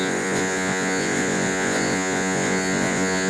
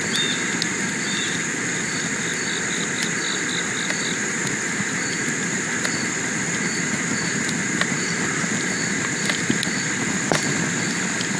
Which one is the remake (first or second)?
first